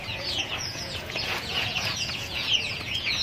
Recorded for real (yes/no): no